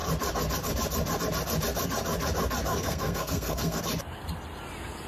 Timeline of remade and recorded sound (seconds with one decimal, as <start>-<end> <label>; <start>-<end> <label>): 0.0-2.7 recorded; 2.7-3.8 remade; 3.8-5.1 recorded